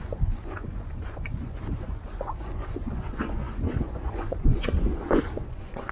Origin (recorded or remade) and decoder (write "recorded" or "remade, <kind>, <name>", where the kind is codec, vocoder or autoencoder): remade, vocoder, Vocos